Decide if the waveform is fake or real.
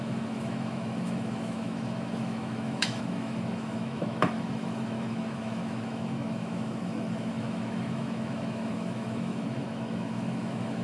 fake